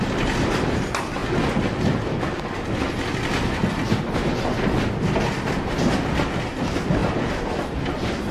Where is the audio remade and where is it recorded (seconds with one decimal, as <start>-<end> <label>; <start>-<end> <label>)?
0.0-8.3 recorded

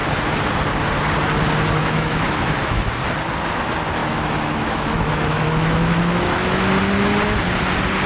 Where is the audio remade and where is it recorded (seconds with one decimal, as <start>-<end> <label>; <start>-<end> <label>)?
0.0-1.8 recorded; 1.8-2.9 remade; 2.9-4.0 recorded; 4.0-6.8 remade; 6.8-8.1 recorded

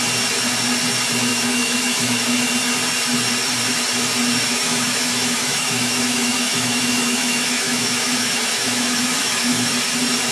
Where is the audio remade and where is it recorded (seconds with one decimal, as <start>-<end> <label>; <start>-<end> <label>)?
0.0-1.3 recorded; 1.3-2.5 remade; 2.5-4.5 recorded; 4.5-9.7 remade; 9.7-10.3 recorded

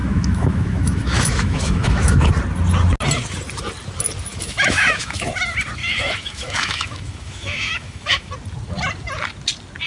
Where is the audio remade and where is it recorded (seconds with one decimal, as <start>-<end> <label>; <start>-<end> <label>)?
0.0-2.3 remade; 2.3-4.3 recorded; 4.3-5.3 remade; 5.3-5.8 recorded; 5.8-8.3 remade; 8.3-9.9 recorded

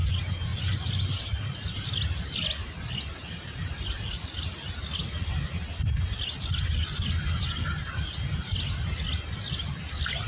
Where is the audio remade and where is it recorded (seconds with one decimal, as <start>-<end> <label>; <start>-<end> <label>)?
0.0-10.3 recorded

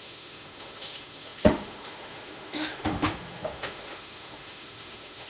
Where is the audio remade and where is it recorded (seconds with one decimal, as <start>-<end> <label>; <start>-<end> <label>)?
0.0-5.3 remade